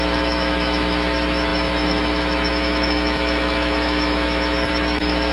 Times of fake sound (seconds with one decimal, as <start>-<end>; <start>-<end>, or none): 0.0-5.3